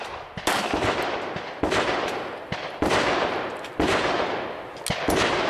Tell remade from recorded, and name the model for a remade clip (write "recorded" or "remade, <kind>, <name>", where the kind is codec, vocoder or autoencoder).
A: recorded